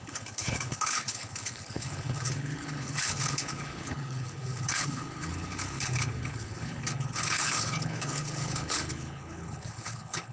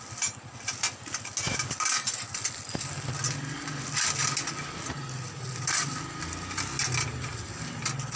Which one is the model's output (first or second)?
first